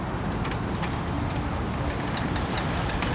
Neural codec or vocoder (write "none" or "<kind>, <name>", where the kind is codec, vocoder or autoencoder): none